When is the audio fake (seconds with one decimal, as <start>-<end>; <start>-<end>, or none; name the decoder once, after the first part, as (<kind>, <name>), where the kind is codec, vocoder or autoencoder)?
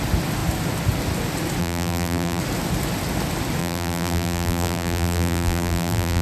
1.6-2.4 (vocoder, BigVGAN v2); 3.6-6.2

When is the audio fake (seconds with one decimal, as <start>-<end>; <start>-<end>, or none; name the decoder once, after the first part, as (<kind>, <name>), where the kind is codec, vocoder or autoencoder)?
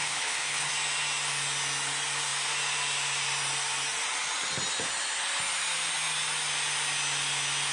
0.0-0.7 (codec, HILCodec)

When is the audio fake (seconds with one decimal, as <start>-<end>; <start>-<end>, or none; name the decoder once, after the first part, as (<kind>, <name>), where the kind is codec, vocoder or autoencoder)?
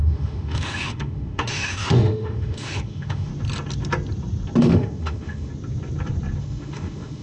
0.0-3.3 (autoencoder, DAC-VAE); 4.6-5.5; 6.4-7.2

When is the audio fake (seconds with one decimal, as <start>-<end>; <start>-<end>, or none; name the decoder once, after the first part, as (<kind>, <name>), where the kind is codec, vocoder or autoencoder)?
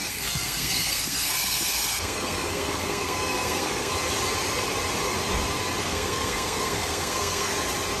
0.0-3.9 (codec, SNAC); 5.8-7.5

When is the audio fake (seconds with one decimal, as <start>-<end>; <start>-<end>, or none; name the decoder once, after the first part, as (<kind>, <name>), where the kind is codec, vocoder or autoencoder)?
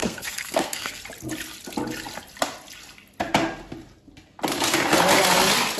0.0-1.0 (codec, SNAC)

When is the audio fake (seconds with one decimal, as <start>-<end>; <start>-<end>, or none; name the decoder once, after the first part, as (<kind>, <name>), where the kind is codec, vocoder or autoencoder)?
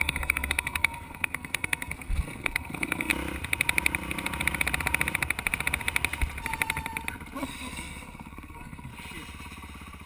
0.0-3.1 (codec, SNAC); 7.4-8.9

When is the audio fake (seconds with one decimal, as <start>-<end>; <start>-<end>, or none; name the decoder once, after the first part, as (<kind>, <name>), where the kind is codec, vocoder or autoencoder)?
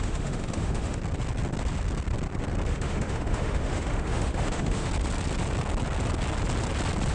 0.0-1.0 (autoencoder, DAC-VAE); 2.7-4.9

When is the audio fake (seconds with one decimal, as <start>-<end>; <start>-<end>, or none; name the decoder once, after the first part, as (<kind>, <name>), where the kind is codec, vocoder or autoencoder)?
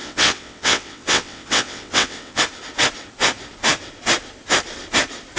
0.0-2.4 (vocoder, WaveNeXt)